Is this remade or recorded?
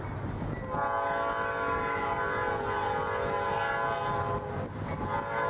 recorded